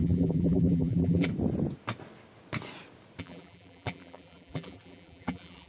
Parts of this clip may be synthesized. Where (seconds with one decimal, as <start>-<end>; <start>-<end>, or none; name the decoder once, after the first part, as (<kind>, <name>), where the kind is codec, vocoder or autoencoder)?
0.0-1.3 (vocoder, BigVGAN v2); 3.2-5.7